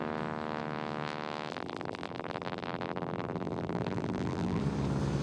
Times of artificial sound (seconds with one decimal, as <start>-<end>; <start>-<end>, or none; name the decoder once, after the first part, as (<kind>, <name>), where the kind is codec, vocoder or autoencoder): 1.5-4.6 (vocoder, BigVGAN v2)